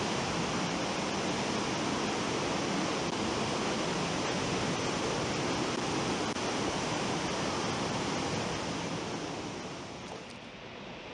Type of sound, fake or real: real